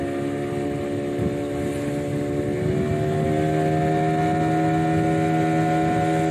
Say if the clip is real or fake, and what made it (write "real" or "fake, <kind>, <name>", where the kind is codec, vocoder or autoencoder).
real